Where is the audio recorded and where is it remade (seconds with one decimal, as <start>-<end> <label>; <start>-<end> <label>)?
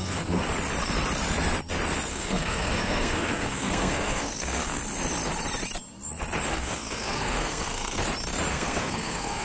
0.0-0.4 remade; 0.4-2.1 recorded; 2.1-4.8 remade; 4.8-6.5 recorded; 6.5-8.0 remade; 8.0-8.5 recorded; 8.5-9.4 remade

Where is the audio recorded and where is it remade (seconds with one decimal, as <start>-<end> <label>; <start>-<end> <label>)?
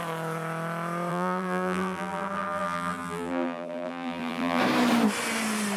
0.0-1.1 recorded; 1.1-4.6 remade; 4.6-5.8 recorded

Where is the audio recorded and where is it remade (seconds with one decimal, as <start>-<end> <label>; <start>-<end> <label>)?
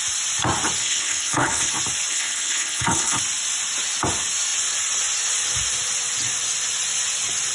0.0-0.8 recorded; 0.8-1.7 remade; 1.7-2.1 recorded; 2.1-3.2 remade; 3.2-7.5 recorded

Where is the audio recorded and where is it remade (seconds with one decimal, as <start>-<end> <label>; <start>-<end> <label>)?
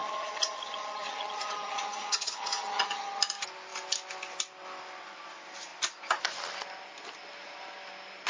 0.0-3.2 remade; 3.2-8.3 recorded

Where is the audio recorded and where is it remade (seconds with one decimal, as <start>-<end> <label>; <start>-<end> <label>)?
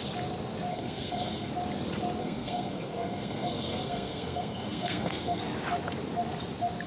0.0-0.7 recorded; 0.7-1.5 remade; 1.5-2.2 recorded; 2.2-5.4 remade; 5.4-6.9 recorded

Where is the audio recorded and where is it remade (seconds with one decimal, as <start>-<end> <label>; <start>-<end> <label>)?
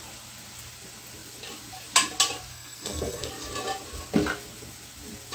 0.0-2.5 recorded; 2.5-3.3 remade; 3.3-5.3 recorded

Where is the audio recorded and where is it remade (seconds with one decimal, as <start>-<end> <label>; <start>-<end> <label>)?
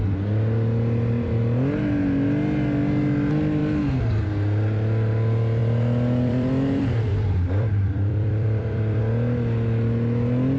0.0-5.6 recorded; 5.6-9.0 remade; 9.0-10.6 recorded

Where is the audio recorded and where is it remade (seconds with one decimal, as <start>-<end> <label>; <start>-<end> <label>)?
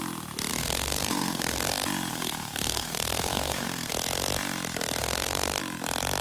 0.0-0.5 recorded; 0.5-1.7 remade; 1.7-2.1 recorded; 2.1-3.9 remade; 3.9-5.0 recorded; 5.0-5.6 remade; 5.6-6.2 recorded